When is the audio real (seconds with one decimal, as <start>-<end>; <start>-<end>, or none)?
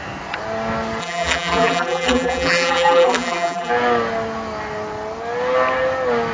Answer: 0.0-1.0; 3.7-6.3